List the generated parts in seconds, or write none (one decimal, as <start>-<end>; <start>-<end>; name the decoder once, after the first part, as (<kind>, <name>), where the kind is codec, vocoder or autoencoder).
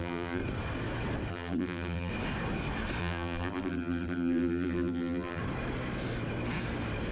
0.0-0.4 (vocoder, BigVGAN v2); 1.3-2.1; 3.0-5.4